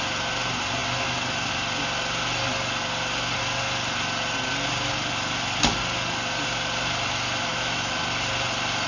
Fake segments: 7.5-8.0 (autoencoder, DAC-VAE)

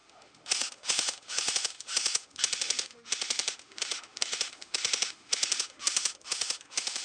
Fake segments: 0.0-7.0 (autoencoder, DAC-VAE)

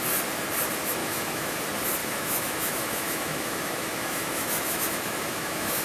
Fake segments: 1.0-1.6 (autoencoder, DAC-VAE); 2.0-5.8

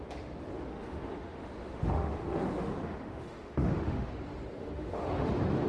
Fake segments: 0.7-4.1 (autoencoder, DAC-VAE); 4.6-5.3

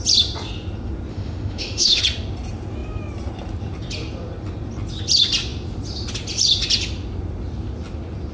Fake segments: 1.1-2.0 (autoencoder, DAC-VAE)